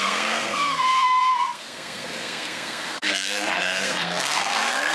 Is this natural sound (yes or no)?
no